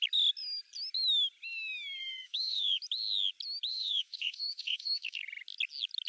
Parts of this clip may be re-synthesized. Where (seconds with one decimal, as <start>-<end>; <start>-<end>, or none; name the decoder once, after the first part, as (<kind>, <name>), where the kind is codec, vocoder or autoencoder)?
2.0-2.8 (autoencoder, DAC-VAE); 3.7-5.2